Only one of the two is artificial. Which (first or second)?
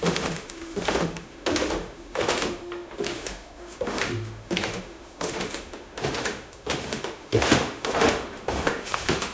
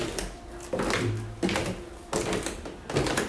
first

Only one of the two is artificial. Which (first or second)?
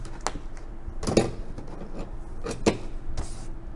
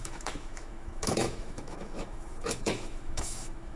second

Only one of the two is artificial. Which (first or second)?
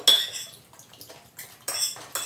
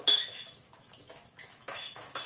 second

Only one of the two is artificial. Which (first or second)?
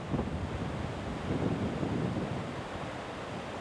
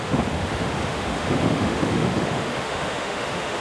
second